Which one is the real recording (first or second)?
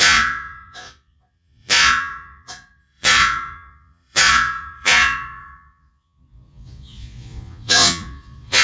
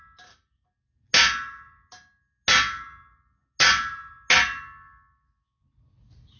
second